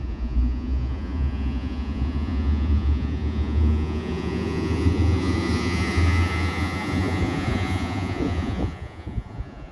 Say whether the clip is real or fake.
fake